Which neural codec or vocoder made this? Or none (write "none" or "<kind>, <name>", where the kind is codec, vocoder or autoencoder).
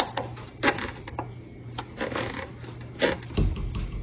none